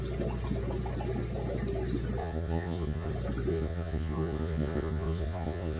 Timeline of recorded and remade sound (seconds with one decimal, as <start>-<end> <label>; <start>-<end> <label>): 0.0-2.2 recorded; 2.2-3.1 remade; 3.1-3.5 recorded; 3.5-5.8 remade